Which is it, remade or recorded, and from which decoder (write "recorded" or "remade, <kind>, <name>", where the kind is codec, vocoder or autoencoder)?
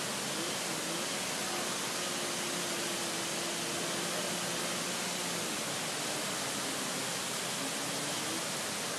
recorded